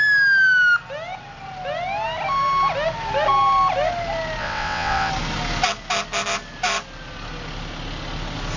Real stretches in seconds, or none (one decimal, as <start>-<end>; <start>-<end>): 0.0-4.4; 5.1-8.6